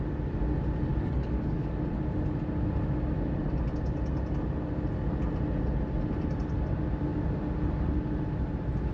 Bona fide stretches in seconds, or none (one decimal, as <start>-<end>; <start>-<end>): 0.0-0.9; 1.8-8.9